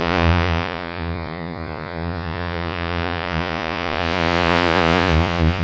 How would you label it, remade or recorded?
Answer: remade